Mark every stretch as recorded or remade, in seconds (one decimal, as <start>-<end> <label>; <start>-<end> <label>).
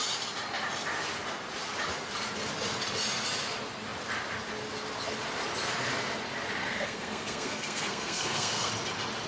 0.0-6.6 recorded; 6.6-8.7 remade; 8.7-9.3 recorded